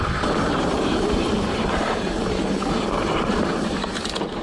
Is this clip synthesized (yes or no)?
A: yes